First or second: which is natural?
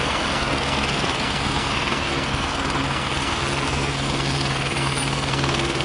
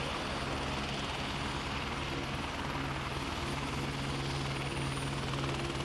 second